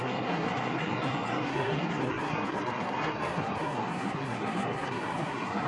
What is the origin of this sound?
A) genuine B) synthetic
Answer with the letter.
B